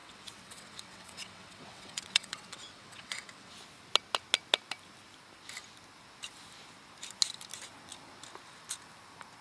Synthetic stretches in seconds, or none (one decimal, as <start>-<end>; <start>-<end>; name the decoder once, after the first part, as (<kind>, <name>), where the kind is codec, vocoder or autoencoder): 0.0-3.5 (vocoder, WaveNeXt)